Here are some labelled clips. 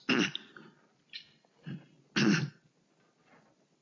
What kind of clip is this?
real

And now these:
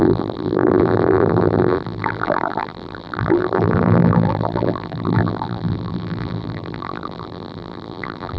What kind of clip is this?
fake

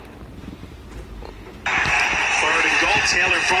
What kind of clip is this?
fake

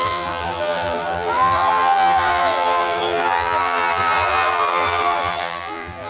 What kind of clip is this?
fake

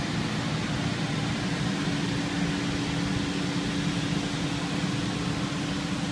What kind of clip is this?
real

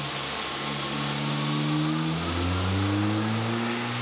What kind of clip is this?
real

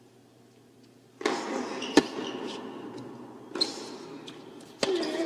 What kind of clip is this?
real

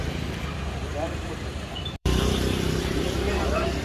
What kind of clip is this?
fake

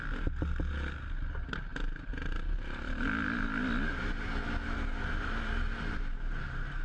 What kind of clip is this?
real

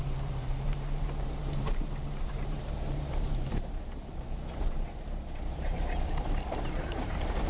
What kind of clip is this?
fake